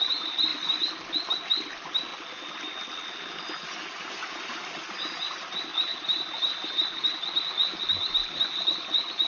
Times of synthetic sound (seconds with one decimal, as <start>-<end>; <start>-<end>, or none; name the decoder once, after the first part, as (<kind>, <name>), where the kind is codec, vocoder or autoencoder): none

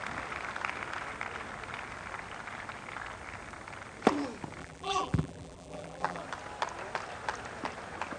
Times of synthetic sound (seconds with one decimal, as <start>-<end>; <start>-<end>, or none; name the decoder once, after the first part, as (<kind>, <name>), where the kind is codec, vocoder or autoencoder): 4.6-6.2 (vocoder, BigVGAN v2)

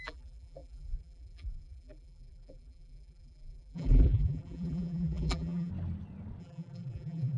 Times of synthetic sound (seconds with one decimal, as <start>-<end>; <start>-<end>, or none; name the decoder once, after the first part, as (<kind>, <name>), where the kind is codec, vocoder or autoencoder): 0.0-5.7 (vocoder, BigVGAN v2); 6.4-7.4

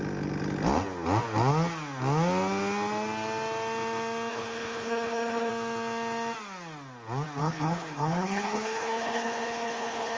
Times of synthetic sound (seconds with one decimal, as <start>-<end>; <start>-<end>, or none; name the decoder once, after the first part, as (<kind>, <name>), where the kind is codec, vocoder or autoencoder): 4.3-5.5 (codec, HILCodec); 7.4-10.2

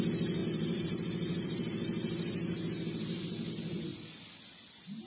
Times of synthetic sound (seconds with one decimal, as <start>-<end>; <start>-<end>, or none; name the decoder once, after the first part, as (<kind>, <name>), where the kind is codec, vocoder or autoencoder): 0.4-3.5 (vocoder, BigVGAN v2); 3.9-5.1

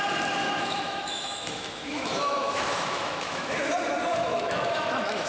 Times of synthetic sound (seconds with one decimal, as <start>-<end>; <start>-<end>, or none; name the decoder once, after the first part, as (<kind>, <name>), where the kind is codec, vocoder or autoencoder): 0.4-3.6 (autoencoder, DAC-VAE); 4.1-5.3